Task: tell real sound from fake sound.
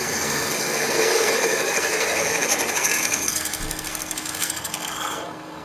fake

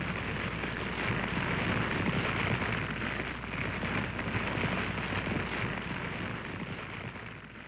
real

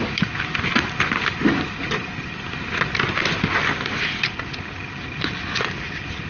real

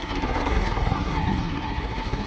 fake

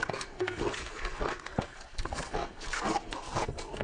fake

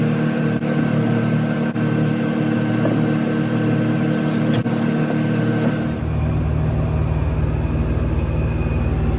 real